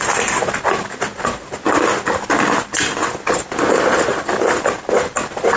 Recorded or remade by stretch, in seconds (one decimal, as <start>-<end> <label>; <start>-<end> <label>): 0.0-5.6 recorded

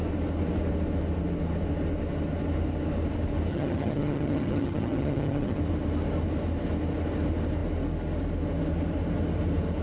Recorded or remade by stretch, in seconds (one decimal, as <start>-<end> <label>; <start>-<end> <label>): 0.0-3.5 recorded; 3.5-5.6 remade; 5.6-9.8 recorded

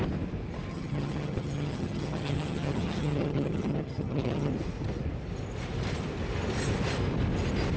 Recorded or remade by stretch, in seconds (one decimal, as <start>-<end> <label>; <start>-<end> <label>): 0.0-0.7 recorded; 0.7-4.5 remade; 4.5-7.8 recorded